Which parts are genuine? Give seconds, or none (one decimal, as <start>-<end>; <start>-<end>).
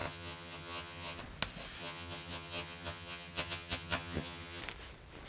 1.2-1.8; 4.6-5.3